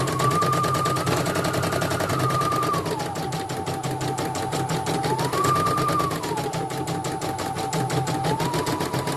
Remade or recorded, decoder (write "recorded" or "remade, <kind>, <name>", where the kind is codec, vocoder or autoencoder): recorded